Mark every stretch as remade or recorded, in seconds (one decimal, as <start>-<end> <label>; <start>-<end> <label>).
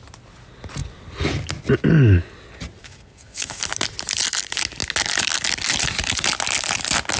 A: 0.0-2.8 recorded; 2.8-3.6 remade; 3.6-7.2 recorded